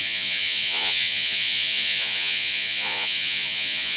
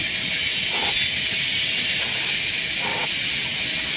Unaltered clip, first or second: second